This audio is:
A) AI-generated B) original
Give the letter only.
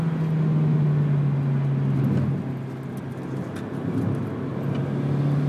B